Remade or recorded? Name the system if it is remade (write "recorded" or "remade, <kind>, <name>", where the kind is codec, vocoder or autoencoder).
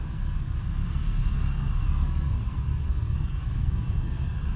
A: remade, codec, SNAC